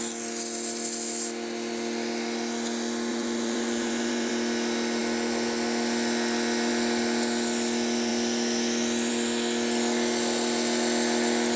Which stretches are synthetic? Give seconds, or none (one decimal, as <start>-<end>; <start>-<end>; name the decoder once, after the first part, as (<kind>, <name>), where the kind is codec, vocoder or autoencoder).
3.1-4.3 (vocoder, Vocos)